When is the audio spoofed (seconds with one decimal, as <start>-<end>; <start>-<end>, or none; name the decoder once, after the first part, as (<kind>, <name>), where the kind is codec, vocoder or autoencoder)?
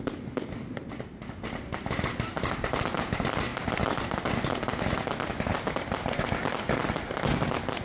none